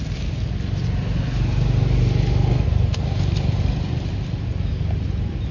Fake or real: real